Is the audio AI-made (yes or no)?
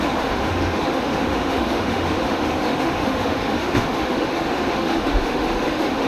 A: yes